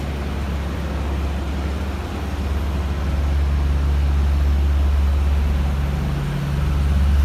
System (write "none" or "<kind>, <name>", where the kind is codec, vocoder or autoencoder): none